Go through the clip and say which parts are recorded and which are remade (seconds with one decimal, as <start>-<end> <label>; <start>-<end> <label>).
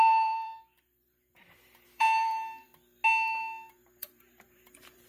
0.0-2.7 remade; 2.7-3.7 recorded; 3.7-5.1 remade